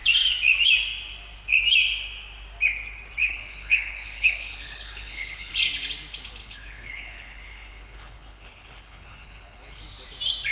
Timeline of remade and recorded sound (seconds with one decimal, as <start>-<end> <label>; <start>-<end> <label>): 0.0-3.2 recorded; 3.2-5.5 remade; 5.5-6.4 recorded; 6.4-9.8 remade; 9.8-10.5 recorded